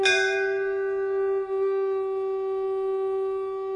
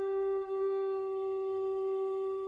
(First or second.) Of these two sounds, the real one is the first